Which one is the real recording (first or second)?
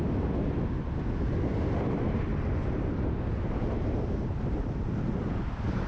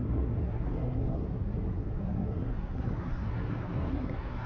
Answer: first